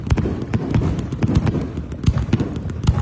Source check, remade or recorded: recorded